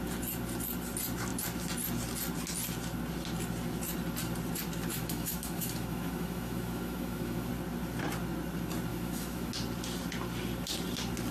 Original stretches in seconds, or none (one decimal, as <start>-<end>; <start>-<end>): 0.0-4.9; 7.5-8.9; 9.5-11.3